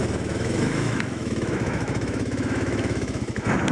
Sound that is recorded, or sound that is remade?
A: remade